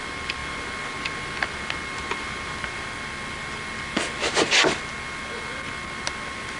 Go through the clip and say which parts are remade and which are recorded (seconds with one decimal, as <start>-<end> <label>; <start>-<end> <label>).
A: 0.0-6.6 recorded